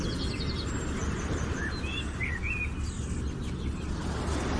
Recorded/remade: recorded